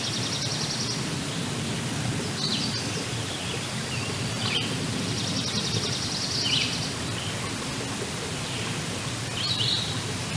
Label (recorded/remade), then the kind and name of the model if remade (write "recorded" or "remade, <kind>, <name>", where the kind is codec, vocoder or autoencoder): recorded